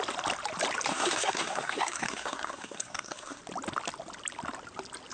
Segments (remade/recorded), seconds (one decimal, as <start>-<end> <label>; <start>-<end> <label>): 0.0-0.9 recorded; 0.9-3.4 remade; 3.4-5.1 recorded